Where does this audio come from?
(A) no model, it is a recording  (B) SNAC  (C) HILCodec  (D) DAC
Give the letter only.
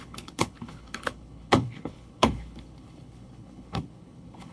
C